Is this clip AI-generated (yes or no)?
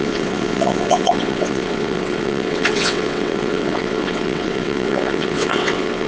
yes